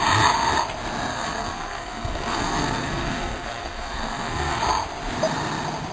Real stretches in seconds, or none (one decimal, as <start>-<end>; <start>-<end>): 0.0-1.1; 4.6-5.9